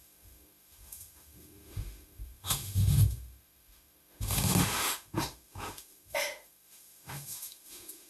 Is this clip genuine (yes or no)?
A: no